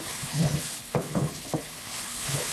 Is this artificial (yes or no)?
yes